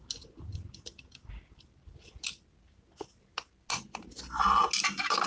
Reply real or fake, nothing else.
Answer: real